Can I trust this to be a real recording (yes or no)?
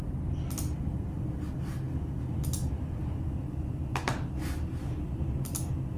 yes